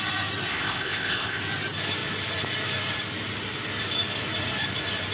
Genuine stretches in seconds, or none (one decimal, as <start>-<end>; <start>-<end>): 0.0-0.5; 1.4-5.1